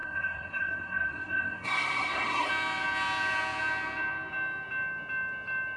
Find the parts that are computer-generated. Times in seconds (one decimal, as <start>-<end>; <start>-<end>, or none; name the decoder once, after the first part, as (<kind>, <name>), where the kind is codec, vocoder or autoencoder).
0.0-2.5 (codec, SNAC)